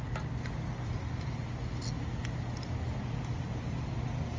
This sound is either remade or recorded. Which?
recorded